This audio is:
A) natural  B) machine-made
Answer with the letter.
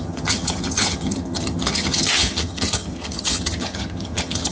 B